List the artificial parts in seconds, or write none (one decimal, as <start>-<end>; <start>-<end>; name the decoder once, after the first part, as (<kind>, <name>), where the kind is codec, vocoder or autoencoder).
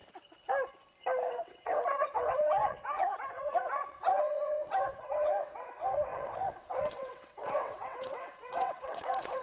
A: 1.3-9.4 (vocoder, WaveNeXt)